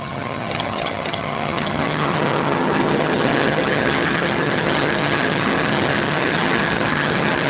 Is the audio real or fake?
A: fake